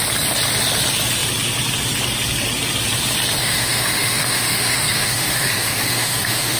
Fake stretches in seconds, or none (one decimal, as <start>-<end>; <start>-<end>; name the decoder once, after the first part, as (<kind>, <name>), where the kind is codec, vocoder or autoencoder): 3.4-6.6 (autoencoder, DAC-VAE)